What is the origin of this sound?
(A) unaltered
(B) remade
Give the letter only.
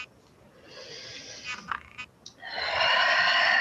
A